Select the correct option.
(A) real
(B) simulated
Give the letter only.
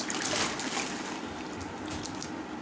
A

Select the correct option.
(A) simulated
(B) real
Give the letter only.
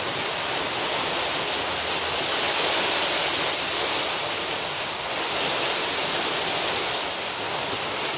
B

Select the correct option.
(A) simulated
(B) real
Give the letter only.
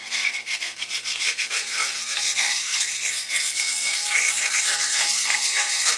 A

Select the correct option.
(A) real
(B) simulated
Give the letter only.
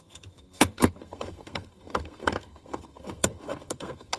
B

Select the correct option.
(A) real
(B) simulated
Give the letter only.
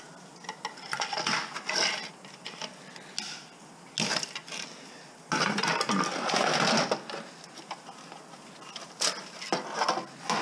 A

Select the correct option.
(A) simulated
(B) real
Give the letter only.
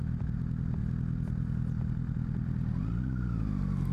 B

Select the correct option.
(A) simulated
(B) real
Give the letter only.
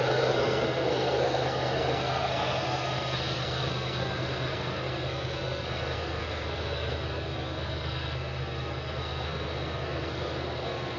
A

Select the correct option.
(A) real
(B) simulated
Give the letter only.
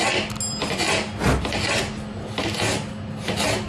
A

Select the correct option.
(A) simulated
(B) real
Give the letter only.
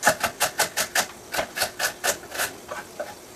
B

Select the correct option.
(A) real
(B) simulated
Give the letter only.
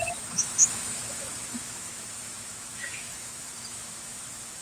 B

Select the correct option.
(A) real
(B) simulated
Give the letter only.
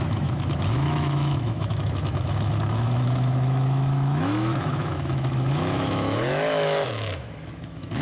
B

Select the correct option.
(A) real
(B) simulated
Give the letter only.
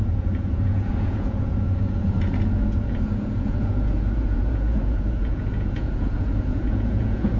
B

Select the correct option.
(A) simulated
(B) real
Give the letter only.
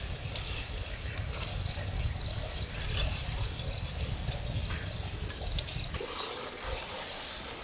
B